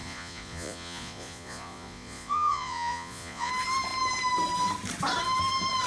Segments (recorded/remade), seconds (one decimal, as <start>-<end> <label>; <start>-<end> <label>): 0.0-3.5 remade; 3.5-5.9 recorded